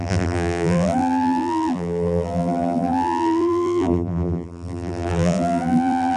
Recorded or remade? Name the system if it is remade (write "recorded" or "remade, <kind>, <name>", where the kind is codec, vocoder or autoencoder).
remade, vocoder, BigVGAN v2